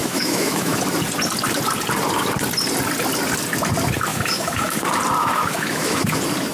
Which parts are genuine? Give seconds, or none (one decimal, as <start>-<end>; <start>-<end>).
0.8-4.1; 4.8-5.2; 6.0-6.5